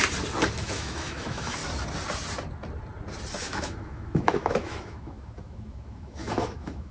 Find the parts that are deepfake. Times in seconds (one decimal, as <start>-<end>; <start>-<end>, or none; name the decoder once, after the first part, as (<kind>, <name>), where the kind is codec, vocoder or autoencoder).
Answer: 0.6-1.6 (autoencoder, DAC-VAE); 3.4-6.9